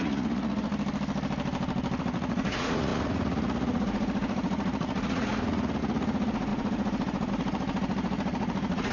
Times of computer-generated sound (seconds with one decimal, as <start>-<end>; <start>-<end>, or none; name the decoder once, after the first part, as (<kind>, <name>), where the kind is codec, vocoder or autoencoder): 0.0-0.7 (vocoder, Vocos); 2.0-8.9